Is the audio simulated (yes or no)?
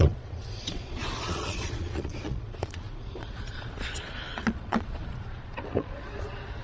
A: yes